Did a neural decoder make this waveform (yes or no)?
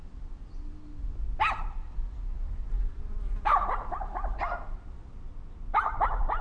no